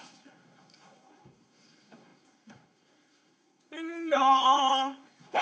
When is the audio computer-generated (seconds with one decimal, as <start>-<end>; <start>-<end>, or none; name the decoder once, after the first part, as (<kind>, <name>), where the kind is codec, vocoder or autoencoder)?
0.0-5.4 (codec, SNAC)